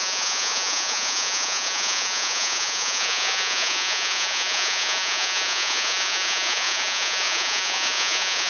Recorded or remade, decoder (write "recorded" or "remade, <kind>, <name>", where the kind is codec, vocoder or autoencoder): remade, vocoder, Vocos